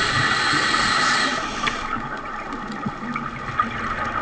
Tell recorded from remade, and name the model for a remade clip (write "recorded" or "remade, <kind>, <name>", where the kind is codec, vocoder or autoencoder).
recorded